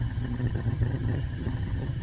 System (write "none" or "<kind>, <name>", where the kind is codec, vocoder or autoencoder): vocoder, HiFi-GAN